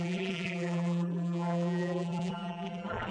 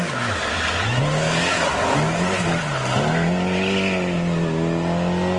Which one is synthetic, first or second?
first